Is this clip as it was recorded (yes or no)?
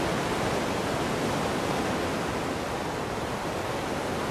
yes